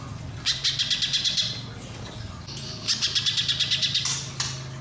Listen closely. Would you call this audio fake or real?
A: real